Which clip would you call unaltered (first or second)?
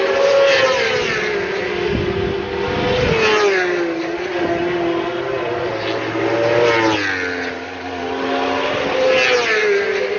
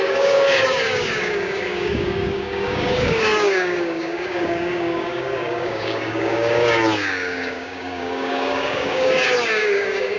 first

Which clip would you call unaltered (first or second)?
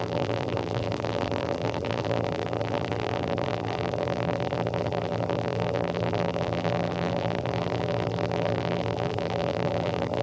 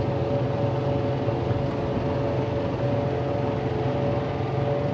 second